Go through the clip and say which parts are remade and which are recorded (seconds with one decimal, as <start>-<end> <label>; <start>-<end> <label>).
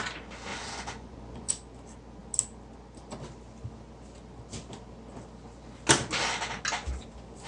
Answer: 0.0-0.5 recorded; 0.5-1.5 remade; 1.5-7.5 recorded